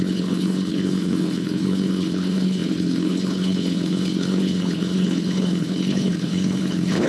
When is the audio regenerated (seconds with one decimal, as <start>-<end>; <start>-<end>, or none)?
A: 0.0-7.1